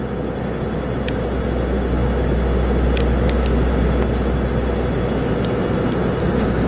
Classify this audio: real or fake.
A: real